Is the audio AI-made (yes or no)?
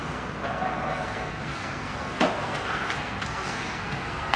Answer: yes